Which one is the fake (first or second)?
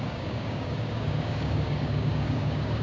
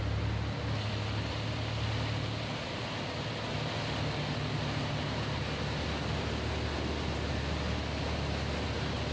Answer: first